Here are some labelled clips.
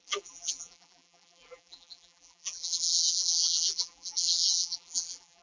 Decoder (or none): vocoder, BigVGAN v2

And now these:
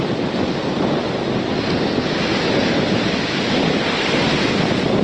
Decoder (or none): none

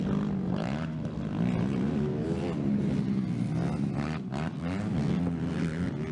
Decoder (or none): none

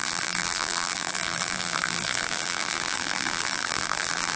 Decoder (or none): vocoder, BigVGAN v2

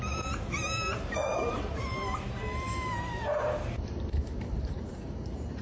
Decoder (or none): vocoder, BigVGAN v2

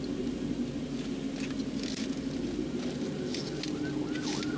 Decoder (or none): none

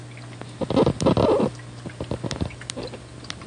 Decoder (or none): vocoder, BigVGAN v2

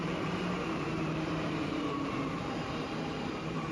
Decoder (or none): vocoder, BigVGAN v2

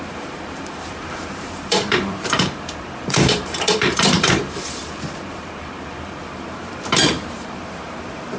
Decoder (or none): vocoder, BigVGAN v2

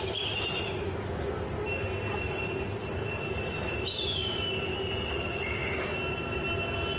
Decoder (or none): none